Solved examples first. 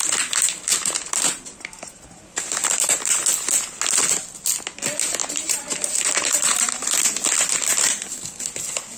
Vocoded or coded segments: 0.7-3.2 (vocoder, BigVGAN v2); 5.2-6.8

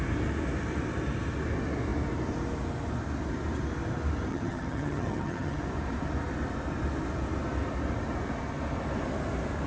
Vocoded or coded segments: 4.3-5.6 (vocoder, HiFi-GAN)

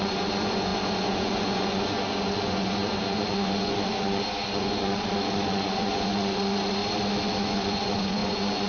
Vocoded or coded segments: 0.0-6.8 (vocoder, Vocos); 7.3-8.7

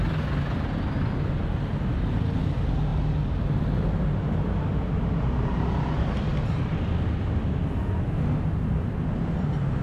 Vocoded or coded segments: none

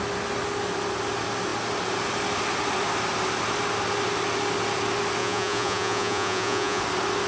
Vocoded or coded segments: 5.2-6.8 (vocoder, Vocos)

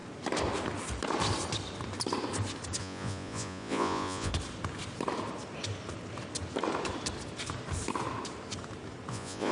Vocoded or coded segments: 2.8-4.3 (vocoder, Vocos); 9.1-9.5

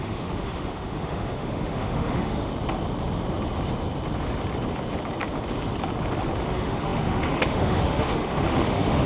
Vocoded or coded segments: 0.0-2.5 (autoencoder, DAC-VAE); 6.4-9.1

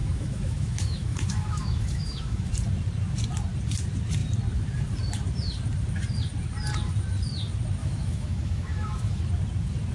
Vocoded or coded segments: 0.0-2.5 (autoencoder, DAC-VAE); 7.8-9.2